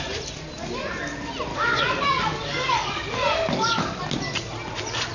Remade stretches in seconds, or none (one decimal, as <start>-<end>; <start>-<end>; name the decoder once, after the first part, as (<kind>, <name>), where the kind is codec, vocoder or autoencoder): 1.5-4.0 (codec, DAC)